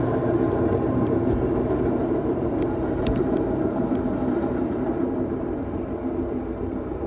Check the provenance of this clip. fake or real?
fake